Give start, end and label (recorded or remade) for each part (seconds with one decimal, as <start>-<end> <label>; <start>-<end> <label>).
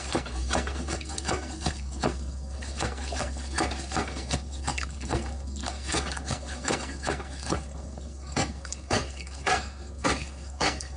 0.0-11.0 remade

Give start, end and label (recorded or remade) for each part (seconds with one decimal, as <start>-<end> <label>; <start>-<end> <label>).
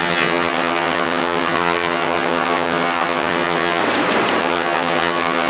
0.0-3.8 remade; 3.8-4.4 recorded; 4.4-5.5 remade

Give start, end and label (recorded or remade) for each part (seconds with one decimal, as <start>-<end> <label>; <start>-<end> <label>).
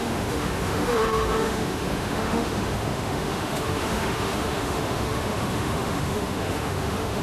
0.0-7.2 remade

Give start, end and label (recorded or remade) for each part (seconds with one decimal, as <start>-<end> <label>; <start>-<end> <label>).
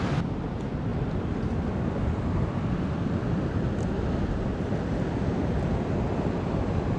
0.0-7.0 recorded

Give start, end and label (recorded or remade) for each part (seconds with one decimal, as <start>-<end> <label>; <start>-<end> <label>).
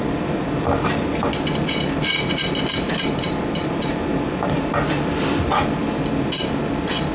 0.0-7.1 recorded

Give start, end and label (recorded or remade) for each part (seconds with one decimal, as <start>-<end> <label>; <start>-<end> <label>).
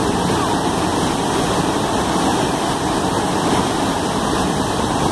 0.0-3.1 remade; 3.1-5.1 recorded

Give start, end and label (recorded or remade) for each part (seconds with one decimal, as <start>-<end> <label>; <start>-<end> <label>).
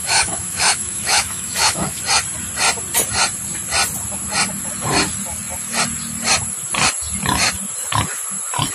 0.0-2.0 remade; 2.0-8.7 recorded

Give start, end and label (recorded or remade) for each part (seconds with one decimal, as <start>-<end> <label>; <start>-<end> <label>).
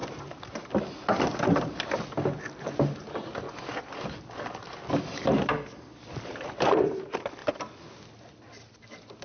0.0-4.9 recorded; 4.9-7.4 remade; 7.4-8.2 recorded; 8.2-9.2 remade